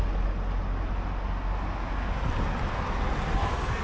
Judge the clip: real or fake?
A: real